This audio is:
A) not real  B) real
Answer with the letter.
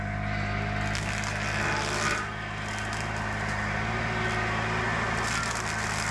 B